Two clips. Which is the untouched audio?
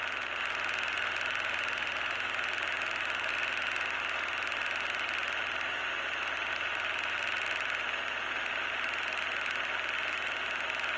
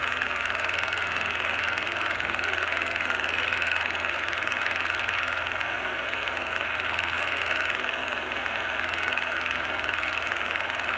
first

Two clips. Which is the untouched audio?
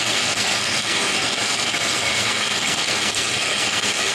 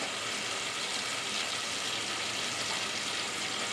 second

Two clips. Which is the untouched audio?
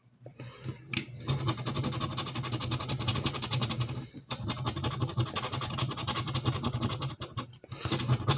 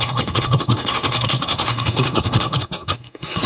first